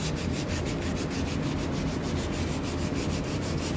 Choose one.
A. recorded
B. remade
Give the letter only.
A